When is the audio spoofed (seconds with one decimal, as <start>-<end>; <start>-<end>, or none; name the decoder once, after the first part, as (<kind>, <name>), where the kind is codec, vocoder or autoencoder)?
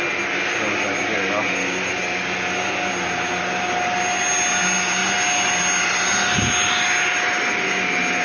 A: none